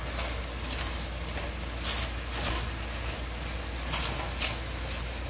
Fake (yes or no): no